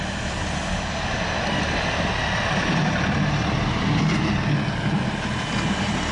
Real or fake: real